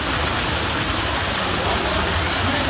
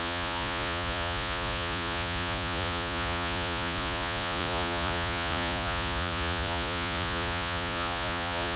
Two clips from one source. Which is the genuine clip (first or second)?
first